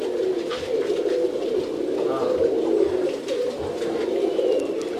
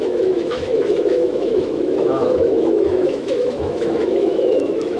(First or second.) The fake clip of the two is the second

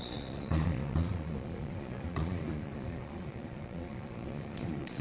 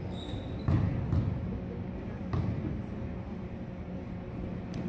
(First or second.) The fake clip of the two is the first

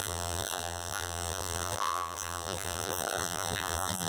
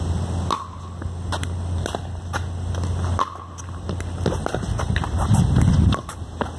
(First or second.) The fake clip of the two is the first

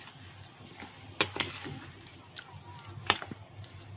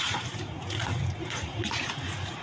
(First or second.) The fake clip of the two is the second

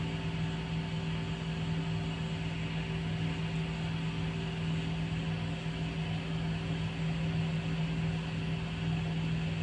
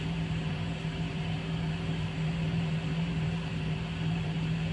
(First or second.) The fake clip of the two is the second